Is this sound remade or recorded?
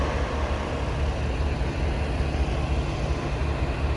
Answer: recorded